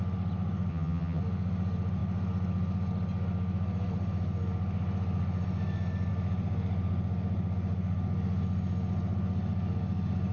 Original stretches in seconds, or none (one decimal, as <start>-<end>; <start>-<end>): 0.0-0.7; 1.2-10.3